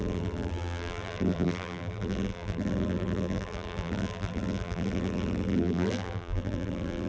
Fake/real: fake